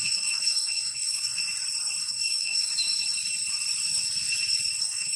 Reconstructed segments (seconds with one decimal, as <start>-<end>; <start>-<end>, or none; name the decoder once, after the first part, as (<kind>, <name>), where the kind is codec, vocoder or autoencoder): 0.0-1.4 (codec, SNAC); 2.0-2.7; 4.8-5.2